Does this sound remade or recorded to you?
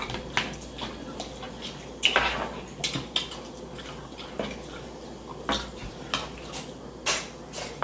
recorded